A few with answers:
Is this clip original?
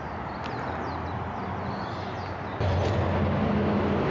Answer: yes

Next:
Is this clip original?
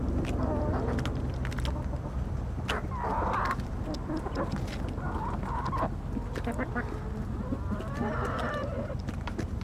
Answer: yes